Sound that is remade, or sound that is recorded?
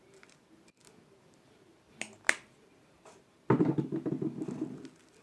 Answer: recorded